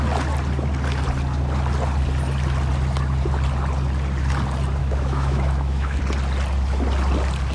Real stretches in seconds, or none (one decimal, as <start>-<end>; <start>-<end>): 0.0-4.8; 6.0-7.5